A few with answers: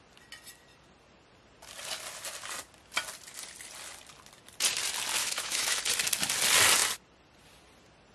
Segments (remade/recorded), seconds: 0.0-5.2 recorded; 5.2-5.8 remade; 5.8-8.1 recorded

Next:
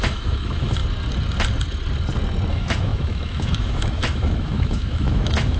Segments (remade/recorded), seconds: 0.0-0.8 remade; 0.8-2.5 recorded; 2.5-5.6 remade